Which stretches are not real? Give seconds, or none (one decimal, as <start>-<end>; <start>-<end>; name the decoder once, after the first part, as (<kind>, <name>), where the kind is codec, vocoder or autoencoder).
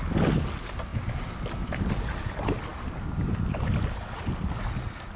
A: none